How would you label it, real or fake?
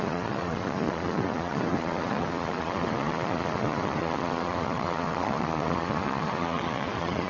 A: fake